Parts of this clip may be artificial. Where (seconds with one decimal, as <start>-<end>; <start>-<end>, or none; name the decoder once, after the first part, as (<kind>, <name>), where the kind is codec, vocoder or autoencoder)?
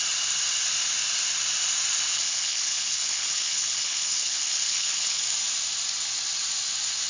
2.1-5.2 (codec, HILCodec)